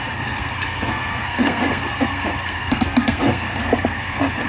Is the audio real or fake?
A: fake